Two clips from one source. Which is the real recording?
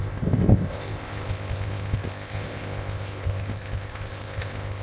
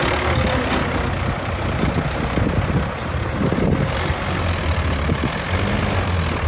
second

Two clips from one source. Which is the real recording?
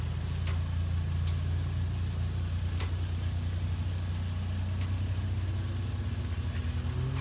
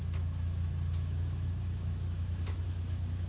first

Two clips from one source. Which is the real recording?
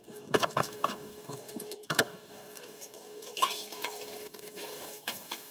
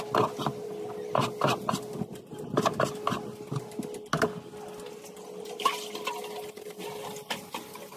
second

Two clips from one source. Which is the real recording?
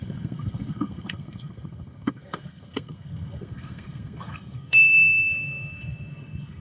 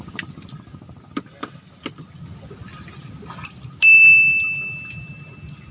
second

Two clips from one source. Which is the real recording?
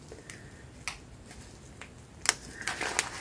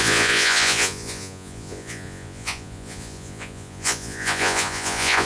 first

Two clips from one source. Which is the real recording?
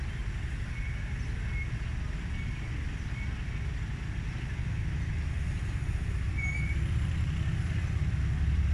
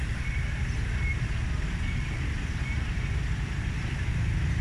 first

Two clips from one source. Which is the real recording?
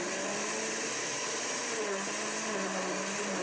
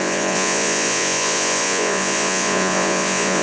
first